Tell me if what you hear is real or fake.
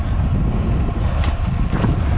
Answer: real